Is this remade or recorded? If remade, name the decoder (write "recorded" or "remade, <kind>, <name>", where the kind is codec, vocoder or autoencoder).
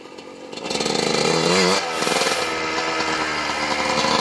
recorded